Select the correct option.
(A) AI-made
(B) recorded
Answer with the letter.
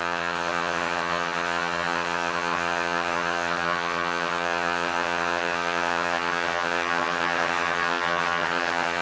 A